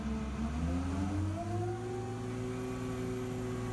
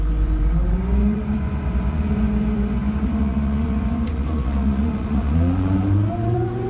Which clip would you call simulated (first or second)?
second